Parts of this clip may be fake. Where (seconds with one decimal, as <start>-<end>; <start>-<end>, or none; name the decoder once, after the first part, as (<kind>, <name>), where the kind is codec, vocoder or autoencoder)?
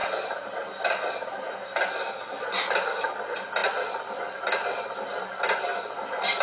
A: none